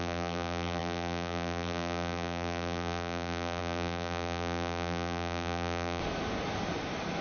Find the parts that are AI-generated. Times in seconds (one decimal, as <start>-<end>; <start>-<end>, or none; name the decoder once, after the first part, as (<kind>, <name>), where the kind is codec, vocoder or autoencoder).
0.0-6.0 (vocoder, BigVGAN v2)